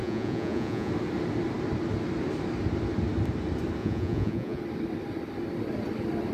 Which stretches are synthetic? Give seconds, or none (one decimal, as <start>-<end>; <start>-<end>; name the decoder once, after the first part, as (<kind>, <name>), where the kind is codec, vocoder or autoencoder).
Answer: 0.0-0.9 (vocoder, Vocos); 3.8-4.6